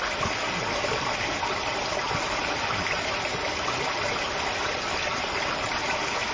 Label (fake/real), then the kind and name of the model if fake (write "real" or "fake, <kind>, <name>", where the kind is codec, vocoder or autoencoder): real